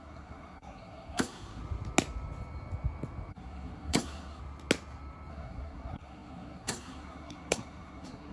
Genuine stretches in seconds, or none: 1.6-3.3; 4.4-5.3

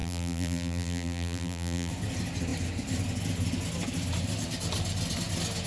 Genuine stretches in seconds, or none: 1.9-5.7

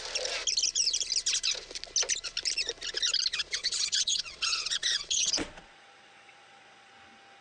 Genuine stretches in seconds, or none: 0.0-3.3; 6.9-7.4

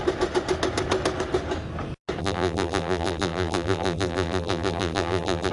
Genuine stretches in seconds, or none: 0.0-2.2

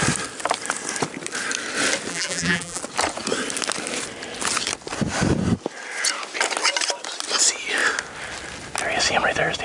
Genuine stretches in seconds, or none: 0.0-2.1; 2.8-9.6

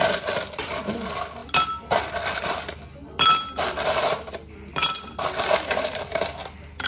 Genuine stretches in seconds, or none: 0.0-6.9

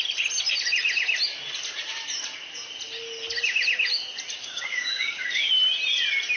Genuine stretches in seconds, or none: 0.0-4.4; 5.5-6.4

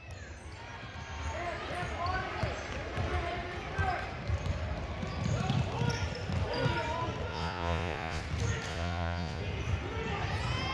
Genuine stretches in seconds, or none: 0.0-7.3; 8.2-8.7; 9.4-10.7